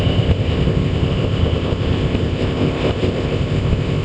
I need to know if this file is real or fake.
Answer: fake